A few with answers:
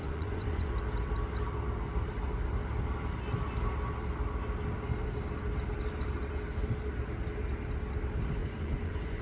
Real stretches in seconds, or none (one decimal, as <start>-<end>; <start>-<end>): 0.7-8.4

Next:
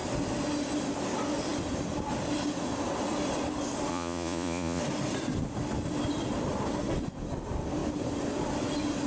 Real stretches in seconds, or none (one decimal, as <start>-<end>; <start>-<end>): 0.0-3.9; 4.8-9.1

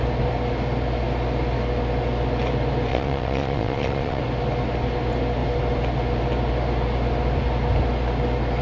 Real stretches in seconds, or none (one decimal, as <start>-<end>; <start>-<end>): 0.0-2.9; 4.2-8.6

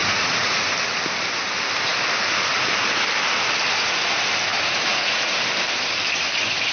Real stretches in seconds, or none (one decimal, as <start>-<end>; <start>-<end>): 0.6-4.5; 5.4-6.7

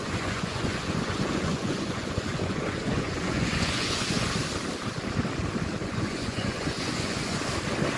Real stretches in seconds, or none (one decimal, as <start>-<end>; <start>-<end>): 4.3-5.8; 7.4-8.0

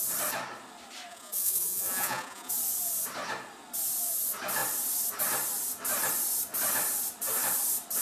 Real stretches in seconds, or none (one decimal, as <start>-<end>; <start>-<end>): 0.0-1.1; 2.5-8.0